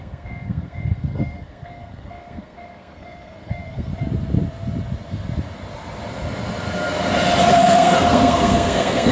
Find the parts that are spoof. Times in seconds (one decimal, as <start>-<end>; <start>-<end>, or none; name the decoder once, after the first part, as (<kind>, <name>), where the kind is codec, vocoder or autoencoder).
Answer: 0.0-3.9 (codec, SNAC); 7.5-9.1